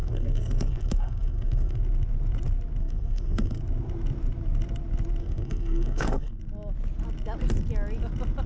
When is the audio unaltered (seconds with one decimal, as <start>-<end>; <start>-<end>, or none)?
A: 1.8-2.8; 3.6-5.2; 6.4-8.5